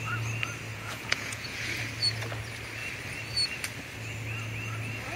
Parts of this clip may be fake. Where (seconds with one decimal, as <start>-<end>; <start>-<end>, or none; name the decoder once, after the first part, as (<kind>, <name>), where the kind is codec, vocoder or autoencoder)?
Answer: 0.7-1.8 (vocoder, Vocos)